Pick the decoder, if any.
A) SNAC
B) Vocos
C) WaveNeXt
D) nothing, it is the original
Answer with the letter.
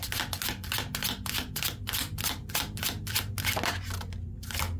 D